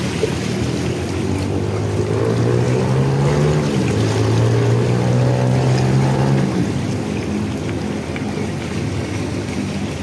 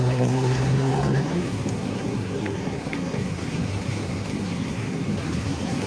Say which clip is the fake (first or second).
second